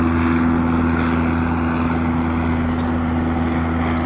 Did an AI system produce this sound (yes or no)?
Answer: no